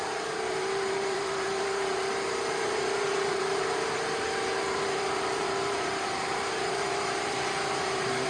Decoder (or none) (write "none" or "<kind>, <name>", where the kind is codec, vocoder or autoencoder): vocoder, BigVGAN v2